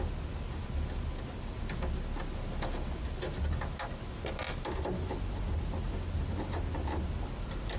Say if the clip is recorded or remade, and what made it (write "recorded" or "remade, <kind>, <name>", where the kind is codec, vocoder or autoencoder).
recorded